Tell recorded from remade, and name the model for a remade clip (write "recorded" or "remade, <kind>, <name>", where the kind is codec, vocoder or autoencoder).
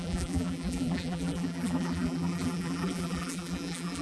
remade, vocoder, BigVGAN v2